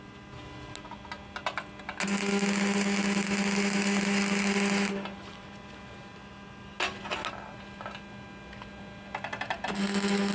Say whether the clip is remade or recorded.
recorded